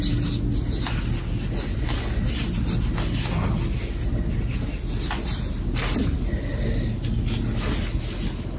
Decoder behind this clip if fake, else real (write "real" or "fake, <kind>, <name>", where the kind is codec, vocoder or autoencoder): real